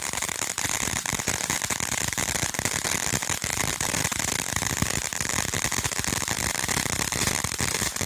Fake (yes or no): yes